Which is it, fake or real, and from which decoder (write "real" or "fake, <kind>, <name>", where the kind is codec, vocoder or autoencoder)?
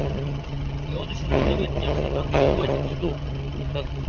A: fake, vocoder, HiFi-GAN